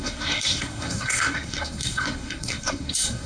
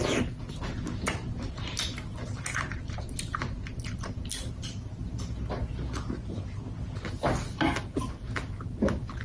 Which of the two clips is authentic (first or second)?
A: second